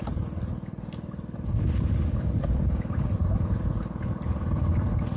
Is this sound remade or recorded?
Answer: recorded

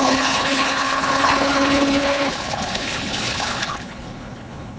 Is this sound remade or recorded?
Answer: remade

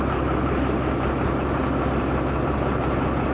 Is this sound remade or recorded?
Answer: recorded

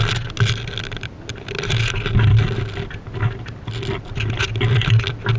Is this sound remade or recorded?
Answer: recorded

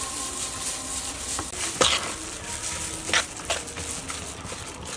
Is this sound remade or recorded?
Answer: recorded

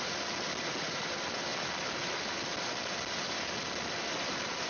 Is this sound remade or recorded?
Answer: recorded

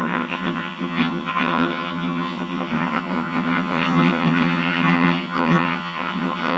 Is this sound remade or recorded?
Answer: remade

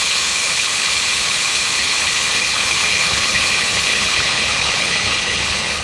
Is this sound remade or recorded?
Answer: remade